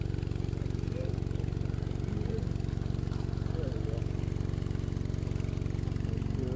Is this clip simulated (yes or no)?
no